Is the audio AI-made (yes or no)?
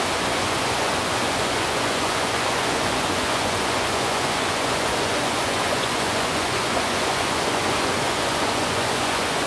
yes